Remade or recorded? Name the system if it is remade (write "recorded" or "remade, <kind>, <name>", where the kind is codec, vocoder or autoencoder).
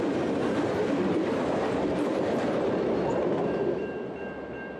remade, vocoder, BigVGAN v2